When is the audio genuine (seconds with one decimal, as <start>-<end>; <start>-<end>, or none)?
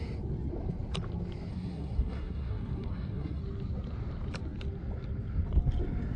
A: 0.0-1.5; 3.4-6.2